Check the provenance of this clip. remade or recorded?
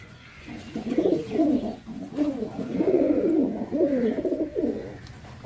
remade